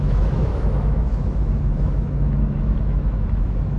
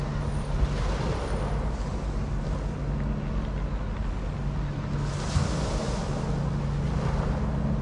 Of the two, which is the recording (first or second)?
second